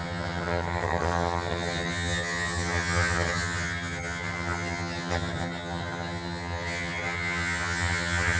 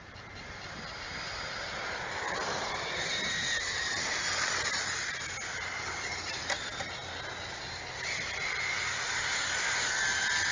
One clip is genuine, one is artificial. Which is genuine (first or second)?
second